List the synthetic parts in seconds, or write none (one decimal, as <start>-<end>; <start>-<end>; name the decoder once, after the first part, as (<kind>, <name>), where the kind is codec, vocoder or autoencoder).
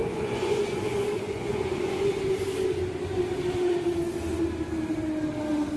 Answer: 0.0-2.1 (vocoder, Vocos)